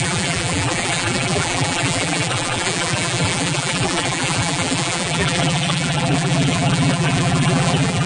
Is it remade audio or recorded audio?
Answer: remade